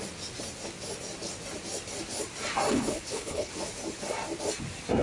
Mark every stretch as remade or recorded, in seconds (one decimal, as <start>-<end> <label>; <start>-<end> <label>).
0.0-2.7 recorded; 2.7-3.5 remade; 3.5-5.0 recorded